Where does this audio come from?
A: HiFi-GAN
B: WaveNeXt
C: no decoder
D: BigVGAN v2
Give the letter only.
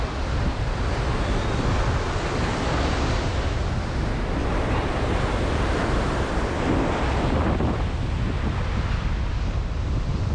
C